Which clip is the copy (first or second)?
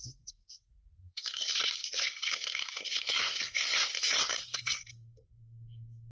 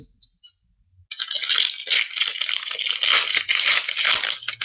first